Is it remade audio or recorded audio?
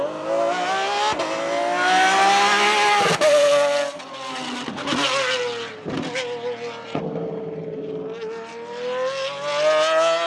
recorded